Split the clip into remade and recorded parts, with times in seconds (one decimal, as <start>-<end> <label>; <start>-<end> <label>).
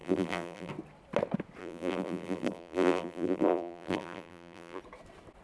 0.0-0.7 remade; 0.7-1.6 recorded; 1.6-4.8 remade; 4.8-5.4 recorded